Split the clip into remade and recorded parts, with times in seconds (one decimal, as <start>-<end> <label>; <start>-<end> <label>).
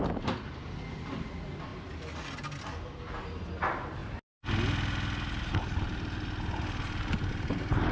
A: 0.0-7.9 recorded